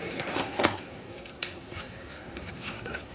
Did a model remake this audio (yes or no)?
yes